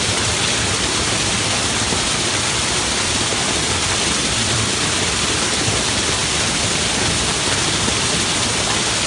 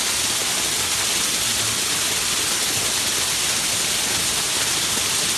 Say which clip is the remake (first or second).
first